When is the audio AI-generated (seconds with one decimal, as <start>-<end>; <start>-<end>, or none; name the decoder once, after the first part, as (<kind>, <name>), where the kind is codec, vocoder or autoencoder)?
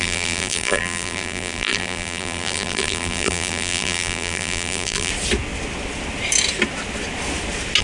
0.0-5.1 (vocoder, BigVGAN v2)